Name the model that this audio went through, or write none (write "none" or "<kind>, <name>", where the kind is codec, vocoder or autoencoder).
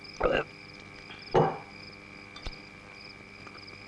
none